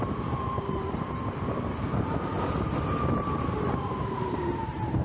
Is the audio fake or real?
fake